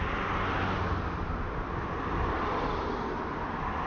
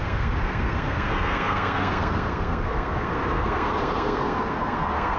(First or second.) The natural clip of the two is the first